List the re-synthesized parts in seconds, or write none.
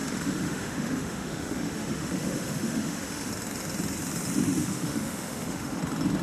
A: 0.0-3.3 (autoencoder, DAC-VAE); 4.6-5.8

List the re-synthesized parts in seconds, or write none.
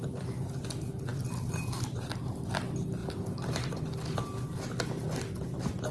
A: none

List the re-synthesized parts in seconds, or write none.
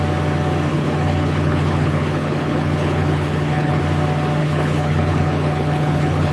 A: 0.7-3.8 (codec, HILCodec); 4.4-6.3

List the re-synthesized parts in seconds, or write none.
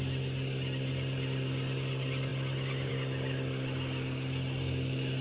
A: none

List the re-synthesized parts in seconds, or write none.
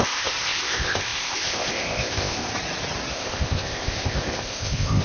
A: 0.0-2.5 (codec, ZipCodec); 3.1-5.0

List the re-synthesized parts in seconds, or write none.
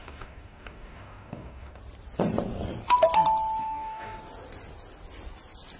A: 0.0-1.8 (codec, DAC); 3.6-4.2